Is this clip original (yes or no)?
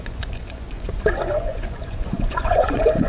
no